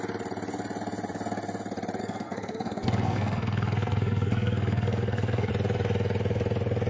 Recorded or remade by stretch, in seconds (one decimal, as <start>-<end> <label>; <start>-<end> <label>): 0.0-2.0 recorded; 2.0-5.5 remade; 5.5-6.9 recorded